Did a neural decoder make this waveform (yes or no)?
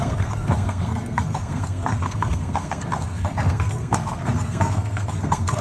yes